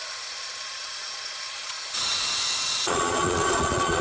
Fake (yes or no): yes